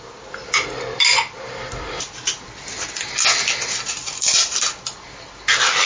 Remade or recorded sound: recorded